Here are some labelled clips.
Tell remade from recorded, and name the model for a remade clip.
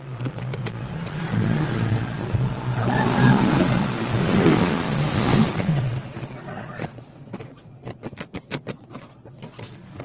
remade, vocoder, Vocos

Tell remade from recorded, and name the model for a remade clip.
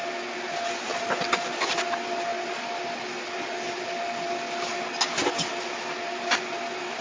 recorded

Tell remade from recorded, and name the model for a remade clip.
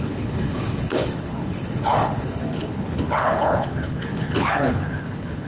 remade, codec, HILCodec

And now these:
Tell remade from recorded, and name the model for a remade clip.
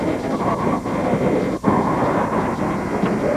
recorded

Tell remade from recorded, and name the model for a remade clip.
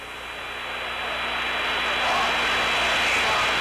recorded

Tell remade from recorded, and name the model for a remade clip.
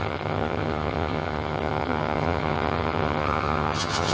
remade, vocoder, HiFi-GAN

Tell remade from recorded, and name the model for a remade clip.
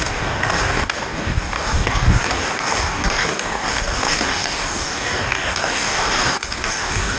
remade, codec, DAC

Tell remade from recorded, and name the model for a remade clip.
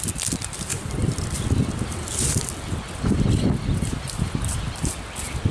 recorded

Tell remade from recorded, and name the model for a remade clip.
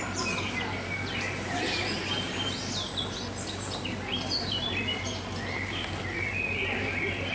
recorded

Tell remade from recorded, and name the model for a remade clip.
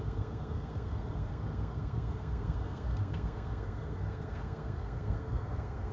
remade, codec, SNAC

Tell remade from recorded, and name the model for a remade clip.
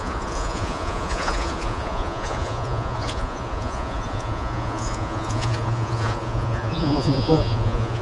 remade, vocoder, Vocos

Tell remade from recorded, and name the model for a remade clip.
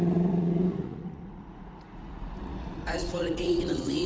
remade, vocoder, Vocos